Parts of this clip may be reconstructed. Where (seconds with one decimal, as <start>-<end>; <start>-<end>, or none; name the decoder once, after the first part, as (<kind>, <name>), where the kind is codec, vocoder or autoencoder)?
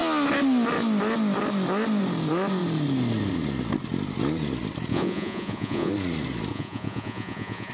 4.9-5.9 (vocoder, Vocos); 6.5-7.7